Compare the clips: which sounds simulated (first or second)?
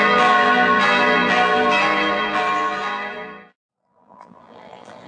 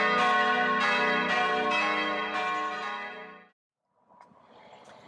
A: first